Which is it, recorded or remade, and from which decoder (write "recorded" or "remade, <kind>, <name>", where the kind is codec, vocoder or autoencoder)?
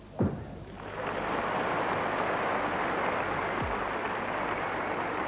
recorded